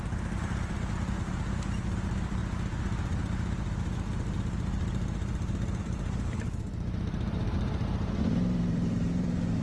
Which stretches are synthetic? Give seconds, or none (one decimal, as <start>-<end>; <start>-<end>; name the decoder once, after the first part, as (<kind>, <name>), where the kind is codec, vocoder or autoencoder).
0.0-2.4 (vocoder, BigVGAN v2); 5.8-9.6